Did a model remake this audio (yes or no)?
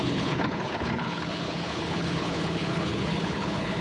yes